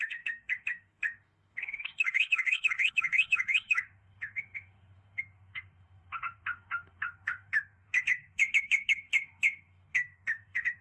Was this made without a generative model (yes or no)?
no